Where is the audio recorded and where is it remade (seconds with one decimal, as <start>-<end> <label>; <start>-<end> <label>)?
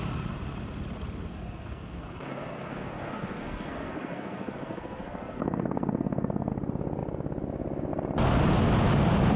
0.0-1.3 recorded; 1.3-6.5 remade; 6.5-9.4 recorded